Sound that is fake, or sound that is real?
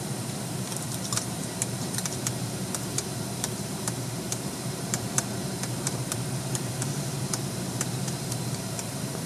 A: fake